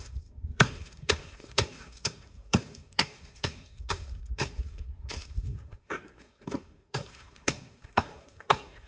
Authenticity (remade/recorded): remade